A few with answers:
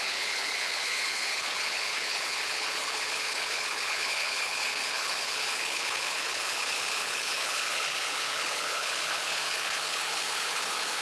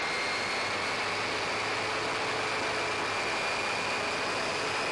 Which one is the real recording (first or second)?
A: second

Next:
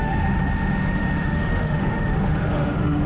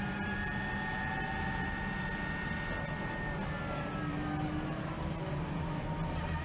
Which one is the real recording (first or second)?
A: second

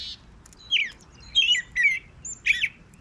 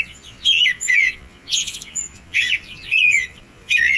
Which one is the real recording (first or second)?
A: first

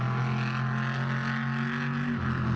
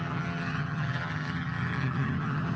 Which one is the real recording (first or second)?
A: first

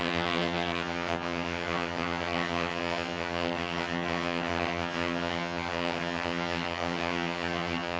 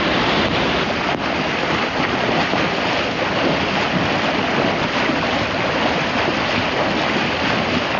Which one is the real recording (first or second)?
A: second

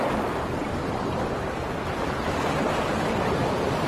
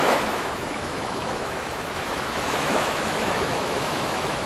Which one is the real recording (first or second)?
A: first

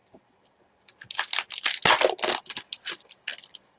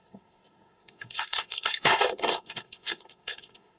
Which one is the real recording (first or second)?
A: first